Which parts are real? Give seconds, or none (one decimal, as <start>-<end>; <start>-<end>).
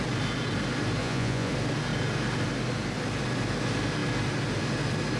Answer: 0.0-1.0; 1.5-5.2